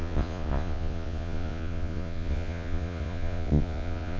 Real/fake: fake